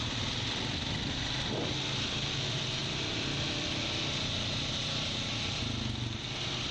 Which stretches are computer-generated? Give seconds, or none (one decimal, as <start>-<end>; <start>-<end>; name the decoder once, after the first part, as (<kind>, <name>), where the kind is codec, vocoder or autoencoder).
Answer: none